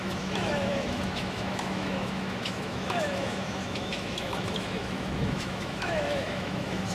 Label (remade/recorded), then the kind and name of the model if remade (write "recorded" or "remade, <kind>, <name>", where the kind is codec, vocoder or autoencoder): remade, autoencoder, DAC-VAE